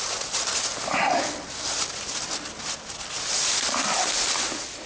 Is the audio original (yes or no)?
yes